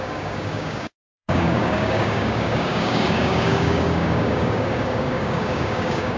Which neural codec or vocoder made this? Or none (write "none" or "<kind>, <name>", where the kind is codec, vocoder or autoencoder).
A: codec, DAC